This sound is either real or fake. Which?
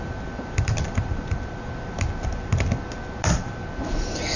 real